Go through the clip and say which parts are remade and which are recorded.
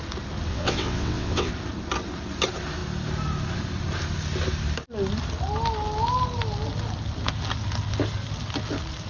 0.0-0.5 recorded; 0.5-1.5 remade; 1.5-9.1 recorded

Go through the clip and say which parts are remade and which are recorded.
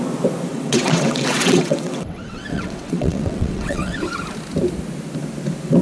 0.0-0.5 recorded; 0.5-4.0 remade; 4.0-5.8 recorded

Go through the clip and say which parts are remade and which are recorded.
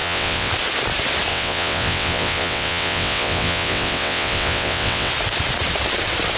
0.0-0.5 remade; 0.5-1.3 recorded; 1.3-5.1 remade; 5.1-6.4 recorded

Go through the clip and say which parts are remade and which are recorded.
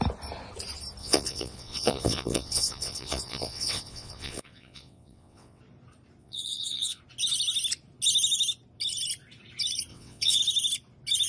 0.0-1.0 recorded; 1.0-5.6 remade; 5.6-6.2 recorded; 6.2-7.0 remade; 7.0-9.9 recorded; 9.9-10.4 remade; 10.4-11.3 recorded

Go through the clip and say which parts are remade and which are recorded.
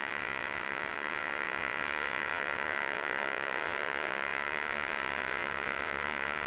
0.0-6.5 remade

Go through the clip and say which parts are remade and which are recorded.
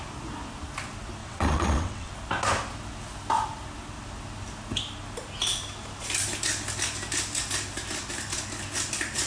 0.0-1.2 recorded; 1.2-2.1 remade; 2.1-9.3 recorded